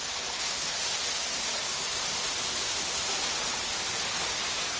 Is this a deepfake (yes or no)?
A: no